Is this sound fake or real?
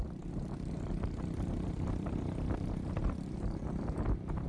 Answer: fake